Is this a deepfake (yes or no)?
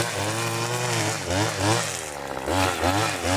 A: no